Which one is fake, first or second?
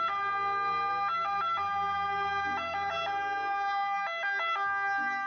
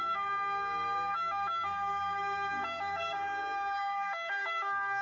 second